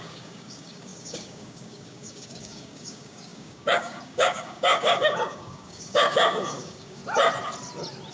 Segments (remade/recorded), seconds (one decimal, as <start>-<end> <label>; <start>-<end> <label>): 0.0-7.0 remade; 7.0-8.1 recorded